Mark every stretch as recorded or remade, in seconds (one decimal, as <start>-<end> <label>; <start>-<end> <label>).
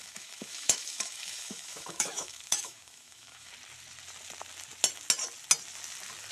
0.0-3.5 remade; 3.5-6.3 recorded